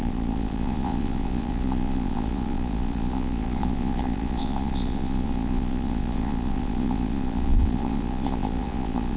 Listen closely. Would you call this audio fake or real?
fake